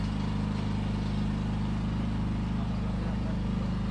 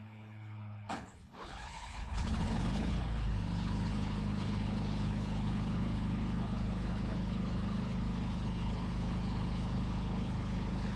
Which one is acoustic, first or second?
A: first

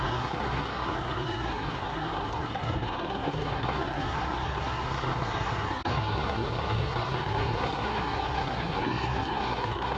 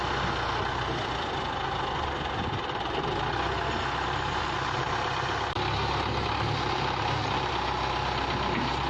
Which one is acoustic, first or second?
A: second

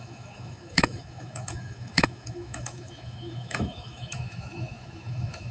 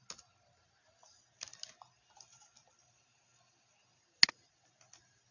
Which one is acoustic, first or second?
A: second